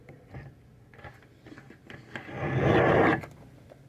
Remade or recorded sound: recorded